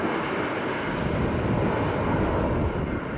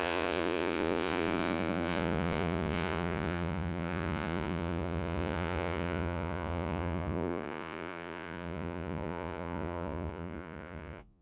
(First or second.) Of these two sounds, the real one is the first